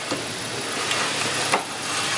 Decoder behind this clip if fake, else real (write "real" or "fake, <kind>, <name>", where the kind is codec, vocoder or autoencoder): real